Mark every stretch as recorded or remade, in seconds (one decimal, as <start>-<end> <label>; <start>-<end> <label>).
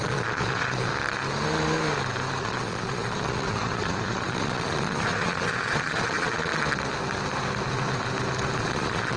0.0-0.9 remade; 0.9-2.4 recorded; 2.4-6.5 remade; 6.5-8.6 recorded; 8.6-9.2 remade